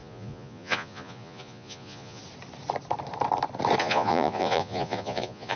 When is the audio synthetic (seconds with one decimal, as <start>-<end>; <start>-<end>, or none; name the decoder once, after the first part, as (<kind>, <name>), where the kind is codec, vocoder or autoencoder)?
0.0-2.2 (vocoder, Vocos); 3.8-5.6